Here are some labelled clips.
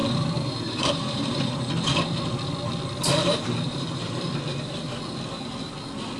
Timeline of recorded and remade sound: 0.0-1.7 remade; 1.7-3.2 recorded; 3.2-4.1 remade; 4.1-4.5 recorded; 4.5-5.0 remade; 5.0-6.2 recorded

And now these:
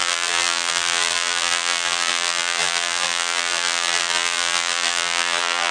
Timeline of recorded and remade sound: 0.0-5.7 remade

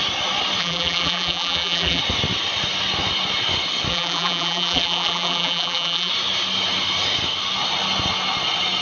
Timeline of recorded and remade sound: 0.0-0.6 recorded; 0.6-2.0 remade; 2.0-3.9 recorded; 3.9-6.1 remade; 6.1-8.8 recorded

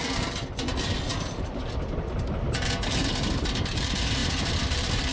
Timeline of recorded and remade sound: 0.0-5.1 remade

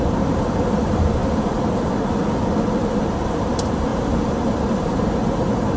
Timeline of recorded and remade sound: 0.0-1.2 remade; 1.2-3.4 recorded; 3.4-5.8 remade

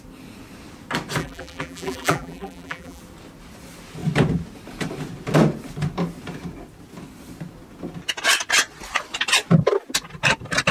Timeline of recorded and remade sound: 0.0-1.2 recorded; 1.2-3.0 remade; 3.0-10.7 recorded

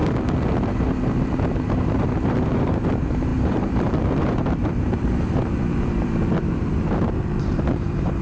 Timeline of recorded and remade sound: 0.0-0.6 recorded; 0.6-8.2 remade